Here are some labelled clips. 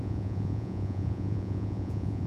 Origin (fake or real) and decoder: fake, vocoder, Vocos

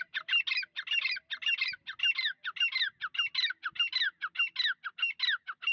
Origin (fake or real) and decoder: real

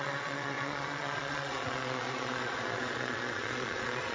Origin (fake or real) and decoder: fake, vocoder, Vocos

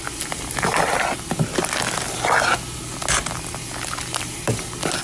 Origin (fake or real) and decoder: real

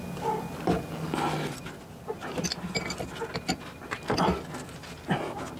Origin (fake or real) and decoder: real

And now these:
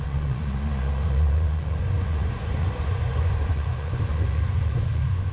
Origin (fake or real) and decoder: fake, vocoder, Vocos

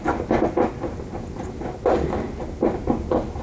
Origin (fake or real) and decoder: real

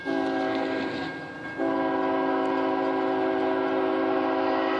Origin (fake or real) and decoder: real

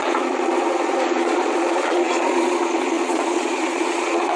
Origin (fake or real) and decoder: fake, vocoder, Vocos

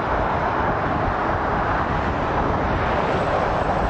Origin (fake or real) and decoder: real